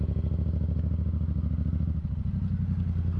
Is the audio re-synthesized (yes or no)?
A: no